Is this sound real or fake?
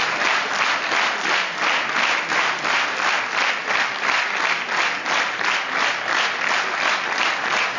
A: real